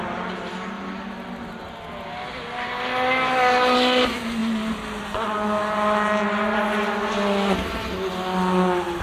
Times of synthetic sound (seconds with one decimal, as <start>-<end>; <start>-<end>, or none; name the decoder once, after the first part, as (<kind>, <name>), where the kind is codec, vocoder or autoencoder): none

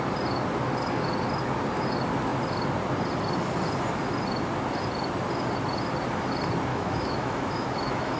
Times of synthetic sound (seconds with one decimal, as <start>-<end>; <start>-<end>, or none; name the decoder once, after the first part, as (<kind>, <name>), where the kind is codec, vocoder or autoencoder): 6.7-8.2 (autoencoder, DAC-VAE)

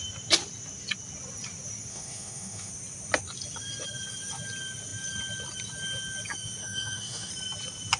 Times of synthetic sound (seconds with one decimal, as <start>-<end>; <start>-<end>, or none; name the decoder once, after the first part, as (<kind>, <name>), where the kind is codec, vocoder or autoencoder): 1.9-2.7 (autoencoder, DAC-VAE); 6.6-7.3